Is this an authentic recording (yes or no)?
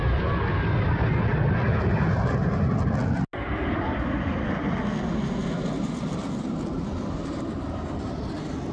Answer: yes